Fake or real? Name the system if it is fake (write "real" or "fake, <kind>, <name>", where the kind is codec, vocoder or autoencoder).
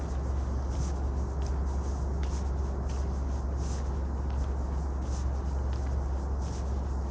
real